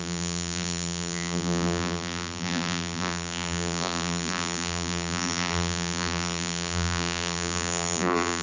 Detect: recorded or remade remade